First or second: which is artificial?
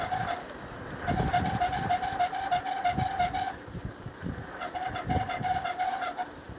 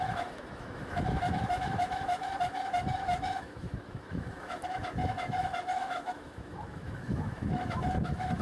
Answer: second